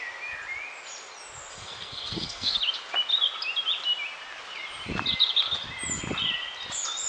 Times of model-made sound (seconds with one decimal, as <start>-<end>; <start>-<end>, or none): 1.5-2.6